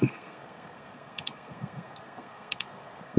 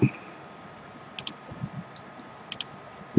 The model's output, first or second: first